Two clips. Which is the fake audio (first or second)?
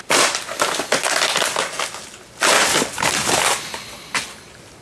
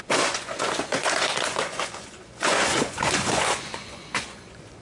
second